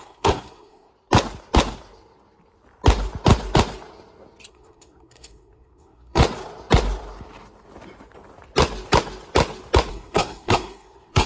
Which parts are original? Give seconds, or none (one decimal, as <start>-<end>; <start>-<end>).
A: 0.9-4.5; 6.2-9.9